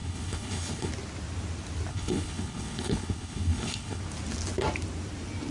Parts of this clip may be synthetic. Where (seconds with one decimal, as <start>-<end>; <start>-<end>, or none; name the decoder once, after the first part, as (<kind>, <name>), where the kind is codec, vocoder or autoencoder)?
0.0-0.9 (codec, HILCodec); 1.9-4.0